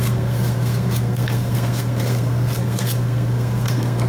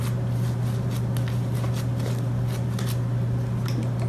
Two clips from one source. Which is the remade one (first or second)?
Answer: first